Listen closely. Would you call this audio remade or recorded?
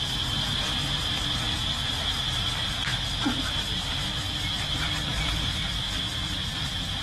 remade